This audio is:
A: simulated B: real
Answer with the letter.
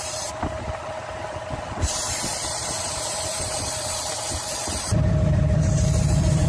A